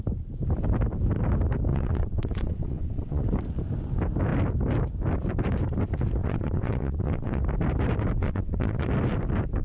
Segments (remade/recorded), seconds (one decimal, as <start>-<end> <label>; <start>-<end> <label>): 0.0-1.7 recorded; 1.7-3.2 remade; 3.2-6.2 recorded; 6.2-7.4 remade; 7.4-8.2 recorded; 8.2-8.9 remade; 8.9-9.6 recorded